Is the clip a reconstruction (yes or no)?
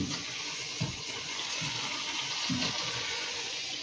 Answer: yes